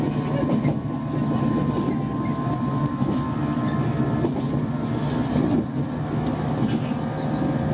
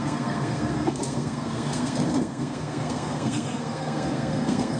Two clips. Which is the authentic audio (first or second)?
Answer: first